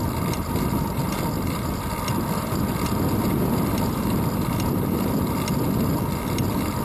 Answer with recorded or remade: remade